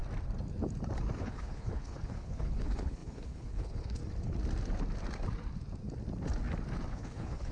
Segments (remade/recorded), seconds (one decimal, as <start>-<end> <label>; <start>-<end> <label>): 0.0-1.2 recorded; 1.2-4.0 remade; 4.0-6.9 recorded; 6.9-7.5 remade